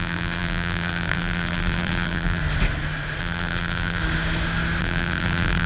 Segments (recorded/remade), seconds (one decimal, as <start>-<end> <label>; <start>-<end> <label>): 0.0-2.4 remade; 2.4-3.2 recorded; 3.2-4.0 remade; 4.0-4.8 recorded; 4.8-5.7 remade